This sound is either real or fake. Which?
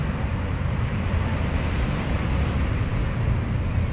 real